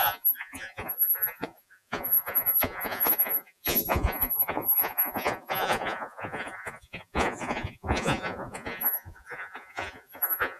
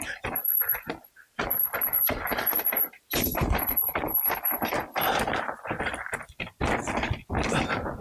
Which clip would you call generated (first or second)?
first